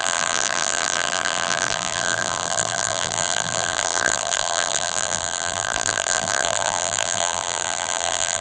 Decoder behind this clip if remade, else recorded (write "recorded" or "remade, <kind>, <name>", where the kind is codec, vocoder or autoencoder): remade, vocoder, BigVGAN v2